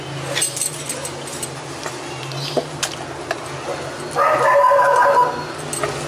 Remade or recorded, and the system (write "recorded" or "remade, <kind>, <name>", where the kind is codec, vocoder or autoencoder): recorded